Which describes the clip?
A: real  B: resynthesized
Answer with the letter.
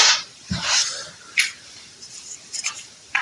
B